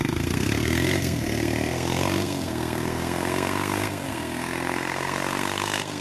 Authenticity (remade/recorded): remade